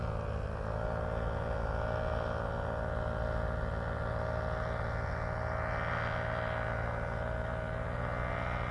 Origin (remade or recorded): recorded